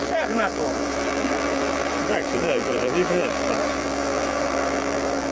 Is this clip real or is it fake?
fake